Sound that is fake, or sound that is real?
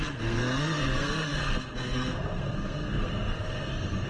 fake